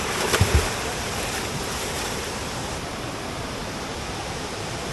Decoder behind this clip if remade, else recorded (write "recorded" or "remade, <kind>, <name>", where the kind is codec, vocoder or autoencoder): remade, vocoder, BigVGAN v2